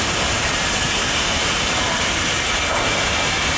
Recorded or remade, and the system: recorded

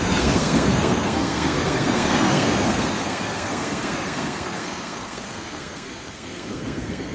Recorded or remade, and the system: remade, codec, SNAC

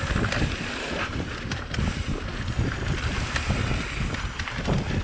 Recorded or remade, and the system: recorded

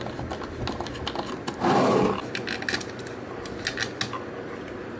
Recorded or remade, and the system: recorded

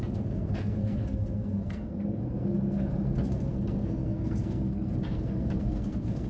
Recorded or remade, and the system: remade, codec, SNAC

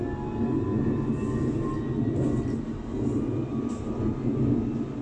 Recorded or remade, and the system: recorded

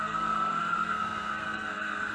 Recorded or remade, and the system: remade, codec, SNAC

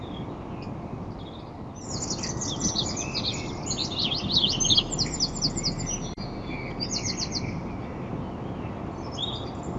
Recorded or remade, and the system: recorded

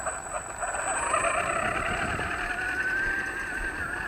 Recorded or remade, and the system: recorded